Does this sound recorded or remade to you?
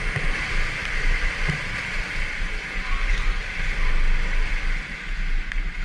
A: recorded